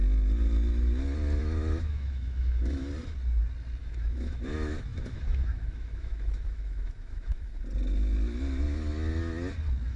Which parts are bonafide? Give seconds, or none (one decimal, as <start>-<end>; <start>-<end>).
0.0-1.4; 2.9-3.8; 7.6-10.0